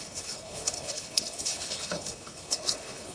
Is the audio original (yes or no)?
no